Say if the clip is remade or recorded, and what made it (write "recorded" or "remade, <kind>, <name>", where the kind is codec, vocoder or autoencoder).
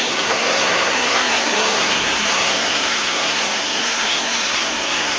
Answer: remade, codec, SNAC